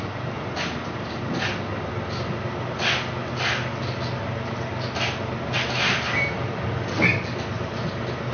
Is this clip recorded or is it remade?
recorded